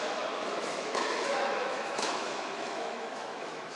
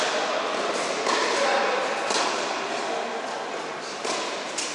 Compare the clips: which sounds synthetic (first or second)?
first